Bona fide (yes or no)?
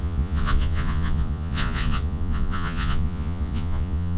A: no